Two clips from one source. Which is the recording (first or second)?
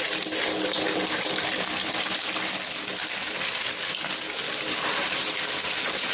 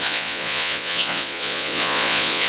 first